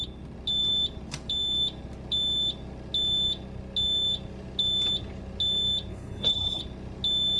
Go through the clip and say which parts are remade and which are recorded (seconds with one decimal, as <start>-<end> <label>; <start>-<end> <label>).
0.0-5.9 recorded; 5.9-6.6 remade; 6.6-7.4 recorded